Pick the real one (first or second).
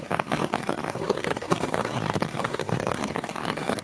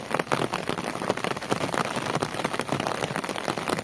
second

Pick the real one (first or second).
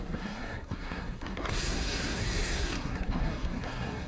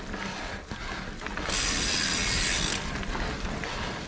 second